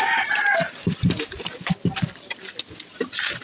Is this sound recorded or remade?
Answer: recorded